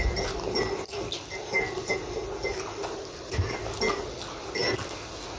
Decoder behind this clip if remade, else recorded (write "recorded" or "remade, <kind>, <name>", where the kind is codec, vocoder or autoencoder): recorded